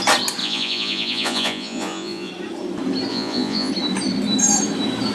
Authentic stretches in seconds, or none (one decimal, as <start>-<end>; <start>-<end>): 0.0-0.4; 2.3-3.1; 3.7-5.1